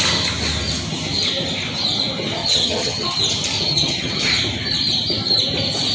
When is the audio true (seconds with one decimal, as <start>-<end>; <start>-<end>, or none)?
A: 0.0-2.4; 3.2-3.7; 4.3-5.9